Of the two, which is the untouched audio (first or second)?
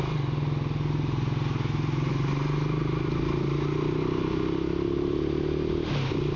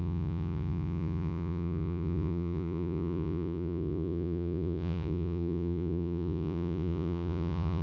first